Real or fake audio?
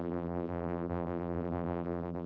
fake